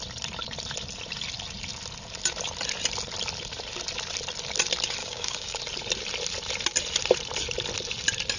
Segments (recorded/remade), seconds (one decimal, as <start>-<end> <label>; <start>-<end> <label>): 0.0-5.0 recorded; 5.0-5.6 remade; 5.6-8.4 recorded